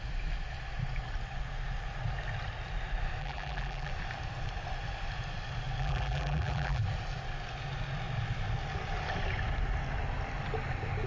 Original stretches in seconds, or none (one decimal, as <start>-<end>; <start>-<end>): 0.0-3.2; 3.9-5.8; 6.8-11.1